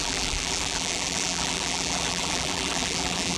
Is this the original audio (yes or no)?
no